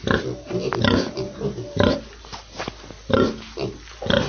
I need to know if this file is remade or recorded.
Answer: recorded